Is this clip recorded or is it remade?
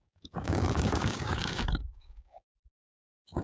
remade